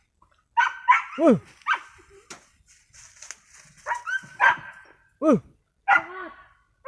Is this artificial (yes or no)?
no